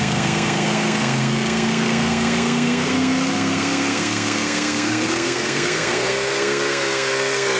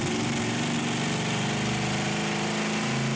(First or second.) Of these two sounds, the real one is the second